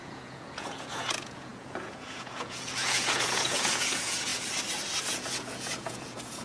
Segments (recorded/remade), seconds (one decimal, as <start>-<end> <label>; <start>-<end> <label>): 0.0-4.3 remade; 4.3-5.0 recorded; 5.0-6.4 remade